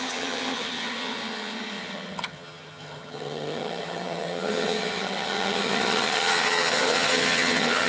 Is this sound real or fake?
fake